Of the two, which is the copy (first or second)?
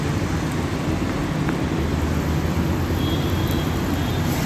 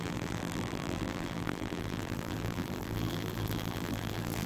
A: second